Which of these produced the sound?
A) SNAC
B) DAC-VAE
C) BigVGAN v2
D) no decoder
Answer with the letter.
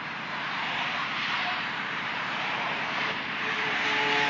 C